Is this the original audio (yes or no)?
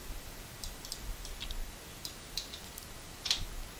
yes